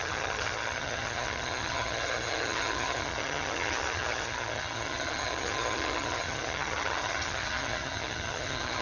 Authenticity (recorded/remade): remade